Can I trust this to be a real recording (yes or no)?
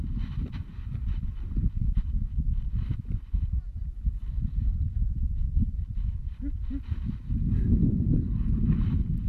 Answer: no